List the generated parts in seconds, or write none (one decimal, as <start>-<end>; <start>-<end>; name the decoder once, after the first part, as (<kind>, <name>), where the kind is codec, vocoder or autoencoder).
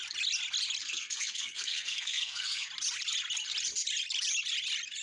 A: 0.8-2.7 (codec, SNAC)